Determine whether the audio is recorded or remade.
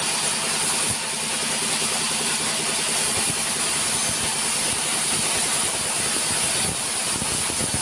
recorded